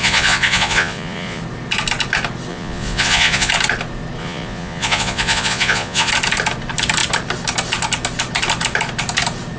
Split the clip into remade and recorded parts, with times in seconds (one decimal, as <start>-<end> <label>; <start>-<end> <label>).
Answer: 0.0-1.4 remade; 1.4-2.5 recorded; 2.5-3.5 remade; 3.5-4.2 recorded; 4.2-6.1 remade; 6.1-9.6 recorded